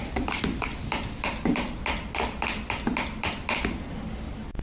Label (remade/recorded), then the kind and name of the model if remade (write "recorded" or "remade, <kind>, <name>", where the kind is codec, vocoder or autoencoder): recorded